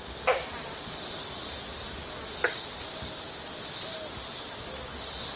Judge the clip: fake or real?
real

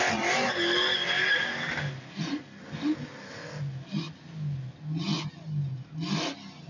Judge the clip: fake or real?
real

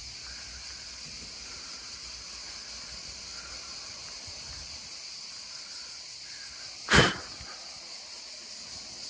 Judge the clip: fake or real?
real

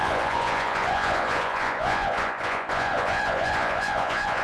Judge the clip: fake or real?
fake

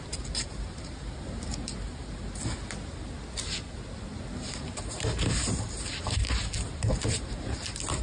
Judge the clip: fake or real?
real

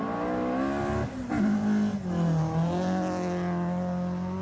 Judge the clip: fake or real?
real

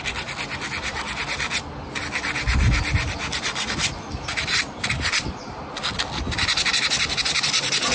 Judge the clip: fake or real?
real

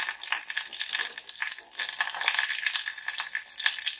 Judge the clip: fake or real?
real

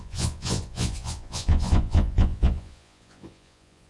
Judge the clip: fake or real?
fake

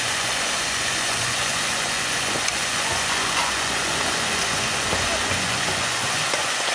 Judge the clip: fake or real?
fake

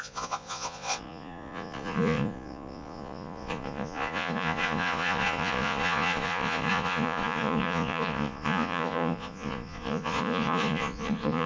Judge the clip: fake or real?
fake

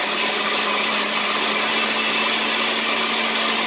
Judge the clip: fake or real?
real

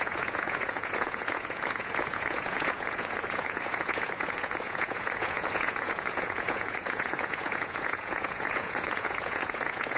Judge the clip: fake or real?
fake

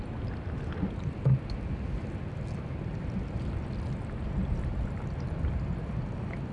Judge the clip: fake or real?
real